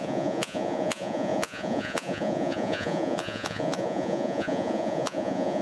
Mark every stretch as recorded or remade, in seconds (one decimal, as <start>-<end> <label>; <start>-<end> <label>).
0.0-5.6 remade